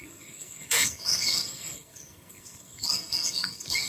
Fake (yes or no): yes